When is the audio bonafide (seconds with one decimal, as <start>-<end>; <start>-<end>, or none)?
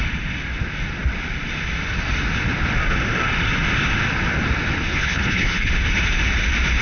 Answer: 0.0-4.9; 5.7-6.8